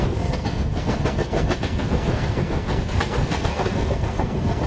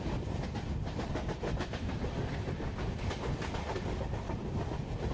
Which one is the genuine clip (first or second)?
second